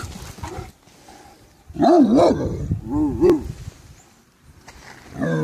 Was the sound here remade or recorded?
remade